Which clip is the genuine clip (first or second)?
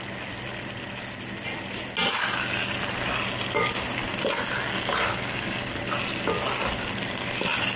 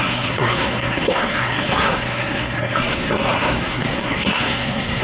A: first